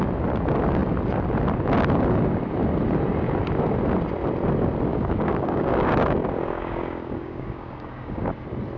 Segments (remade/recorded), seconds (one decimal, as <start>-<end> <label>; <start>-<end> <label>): 0.0-4.9 recorded; 4.9-8.3 remade; 8.3-8.8 recorded